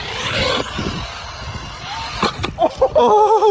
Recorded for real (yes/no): yes